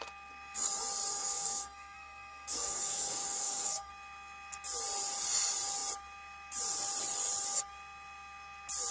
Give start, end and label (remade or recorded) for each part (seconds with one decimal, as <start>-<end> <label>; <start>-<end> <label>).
0.0-1.1 recorded; 1.1-3.9 remade; 3.9-8.9 recorded